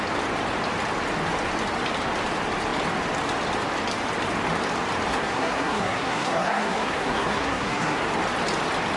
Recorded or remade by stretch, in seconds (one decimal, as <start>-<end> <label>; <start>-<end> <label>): 0.0-5.1 recorded; 5.1-8.0 remade; 8.0-9.0 recorded